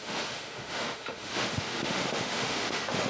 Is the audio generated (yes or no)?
yes